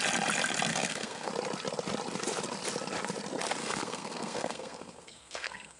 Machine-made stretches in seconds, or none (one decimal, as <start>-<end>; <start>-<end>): 0.7-1.3; 3.6-5.8

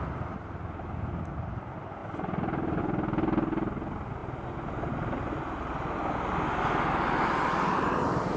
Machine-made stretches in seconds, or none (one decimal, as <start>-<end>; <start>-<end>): 2.0-2.8

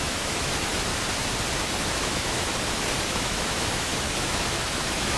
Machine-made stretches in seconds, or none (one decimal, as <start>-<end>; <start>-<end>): 0.0-0.9; 1.8-2.5; 3.1-5.2

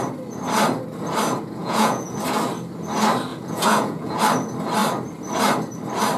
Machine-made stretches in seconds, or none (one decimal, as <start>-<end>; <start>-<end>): 1.6-2.2; 3.3-4.2